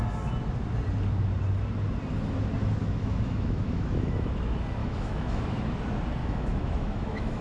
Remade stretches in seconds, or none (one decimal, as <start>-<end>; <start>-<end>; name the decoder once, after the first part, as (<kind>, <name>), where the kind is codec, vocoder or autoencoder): 2.8-4.3 (autoencoder, DAC-VAE); 4.8-5.4; 6.2-7.4